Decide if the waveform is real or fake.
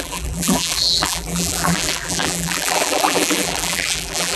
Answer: fake